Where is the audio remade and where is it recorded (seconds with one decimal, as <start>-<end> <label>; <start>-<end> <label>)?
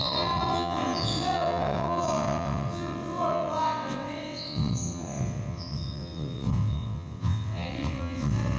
0.0-8.6 remade